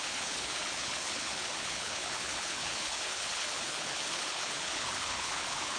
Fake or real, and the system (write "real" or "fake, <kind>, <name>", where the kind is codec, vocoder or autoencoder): fake, codec, HILCodec